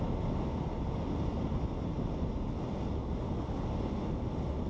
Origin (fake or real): real